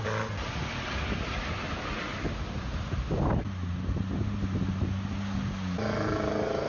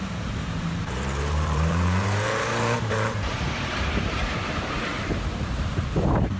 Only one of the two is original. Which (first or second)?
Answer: first